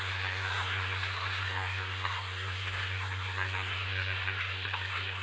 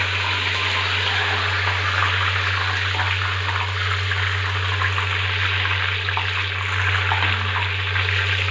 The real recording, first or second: second